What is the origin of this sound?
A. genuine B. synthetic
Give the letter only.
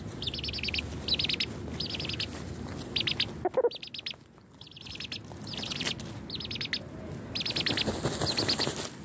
A